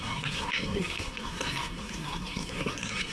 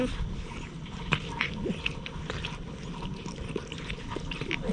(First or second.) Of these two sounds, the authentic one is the second